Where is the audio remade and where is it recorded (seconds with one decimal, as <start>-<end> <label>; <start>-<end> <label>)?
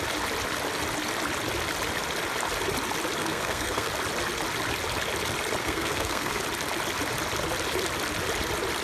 0.0-3.2 recorded; 3.2-3.9 remade; 3.9-5.6 recorded; 5.6-6.4 remade; 6.4-8.8 recorded